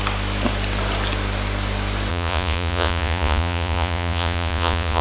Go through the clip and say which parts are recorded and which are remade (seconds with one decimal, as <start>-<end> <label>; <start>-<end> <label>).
0.0-2.1 recorded; 2.1-5.0 remade